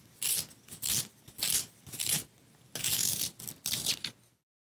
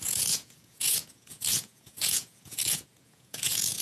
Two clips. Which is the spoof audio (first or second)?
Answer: second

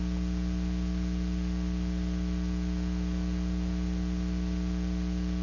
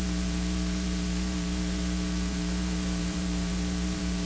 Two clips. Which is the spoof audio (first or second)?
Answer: second